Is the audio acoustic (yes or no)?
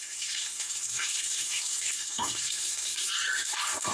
no